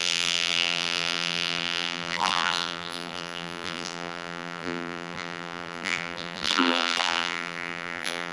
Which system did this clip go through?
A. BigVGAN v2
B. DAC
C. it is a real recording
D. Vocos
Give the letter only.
A